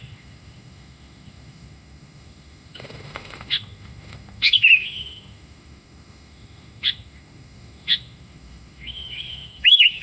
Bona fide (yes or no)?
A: no